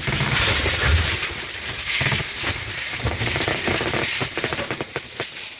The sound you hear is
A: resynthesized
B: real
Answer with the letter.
A